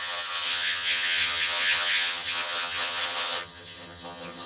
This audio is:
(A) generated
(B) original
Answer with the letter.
A